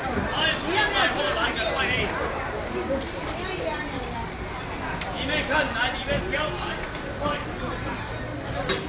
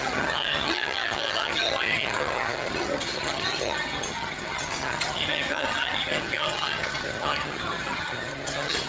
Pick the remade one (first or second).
second